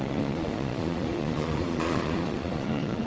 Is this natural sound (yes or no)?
no